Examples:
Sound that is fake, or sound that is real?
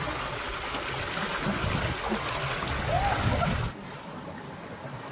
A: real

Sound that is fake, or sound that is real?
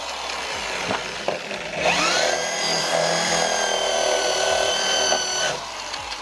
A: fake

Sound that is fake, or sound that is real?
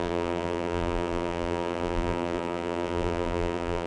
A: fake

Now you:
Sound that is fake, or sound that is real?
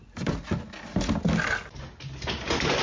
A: real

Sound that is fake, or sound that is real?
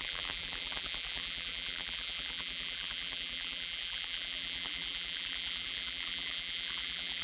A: fake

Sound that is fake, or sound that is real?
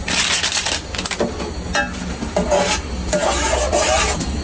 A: real